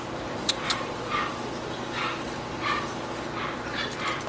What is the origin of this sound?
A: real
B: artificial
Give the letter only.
B